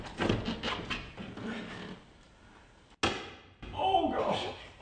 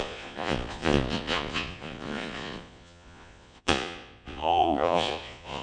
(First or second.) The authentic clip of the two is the first